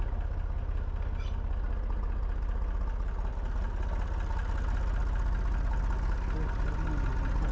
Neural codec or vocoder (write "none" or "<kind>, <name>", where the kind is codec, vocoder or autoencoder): none